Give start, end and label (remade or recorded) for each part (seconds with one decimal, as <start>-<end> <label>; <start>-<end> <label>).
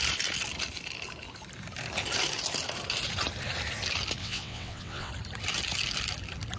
0.0-4.2 recorded; 4.2-5.1 remade; 5.1-6.6 recorded